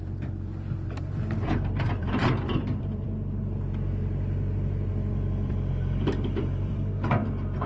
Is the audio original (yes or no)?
no